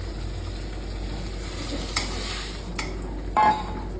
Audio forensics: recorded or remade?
recorded